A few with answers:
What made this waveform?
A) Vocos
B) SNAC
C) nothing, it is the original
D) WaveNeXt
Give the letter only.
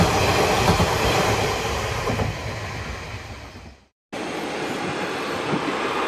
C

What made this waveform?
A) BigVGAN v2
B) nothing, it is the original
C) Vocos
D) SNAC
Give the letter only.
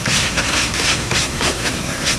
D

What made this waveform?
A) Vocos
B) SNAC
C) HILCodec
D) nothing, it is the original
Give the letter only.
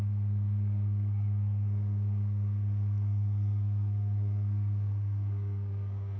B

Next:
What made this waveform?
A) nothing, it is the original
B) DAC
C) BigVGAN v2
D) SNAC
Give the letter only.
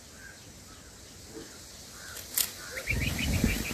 A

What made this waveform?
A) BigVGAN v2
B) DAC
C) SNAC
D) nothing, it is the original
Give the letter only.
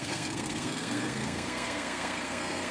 C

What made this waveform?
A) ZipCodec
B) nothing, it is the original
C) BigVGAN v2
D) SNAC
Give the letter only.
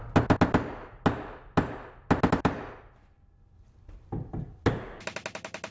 B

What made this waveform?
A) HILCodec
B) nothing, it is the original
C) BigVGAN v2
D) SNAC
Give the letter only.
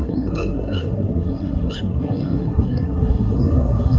D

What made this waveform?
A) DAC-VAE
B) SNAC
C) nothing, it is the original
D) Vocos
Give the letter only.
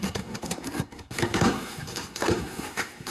B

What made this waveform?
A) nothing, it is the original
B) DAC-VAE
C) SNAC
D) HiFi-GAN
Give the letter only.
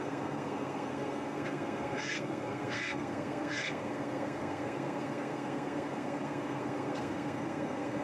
C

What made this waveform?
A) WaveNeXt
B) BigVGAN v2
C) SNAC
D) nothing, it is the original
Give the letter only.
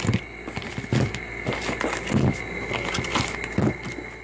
D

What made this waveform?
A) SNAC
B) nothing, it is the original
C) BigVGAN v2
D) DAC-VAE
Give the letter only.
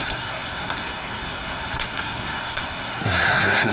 A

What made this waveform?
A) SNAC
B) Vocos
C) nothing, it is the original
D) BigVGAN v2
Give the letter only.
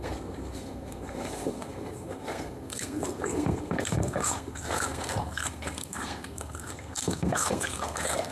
A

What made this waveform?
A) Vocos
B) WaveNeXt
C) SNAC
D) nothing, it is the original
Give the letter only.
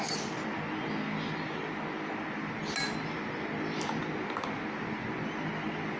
D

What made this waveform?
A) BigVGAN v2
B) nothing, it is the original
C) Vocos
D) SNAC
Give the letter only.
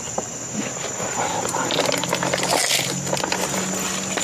B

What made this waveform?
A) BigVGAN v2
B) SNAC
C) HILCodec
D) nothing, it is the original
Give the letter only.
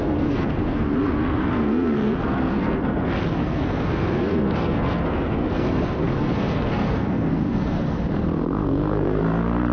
B